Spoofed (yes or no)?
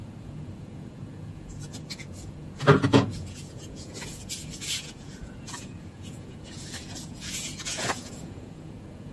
yes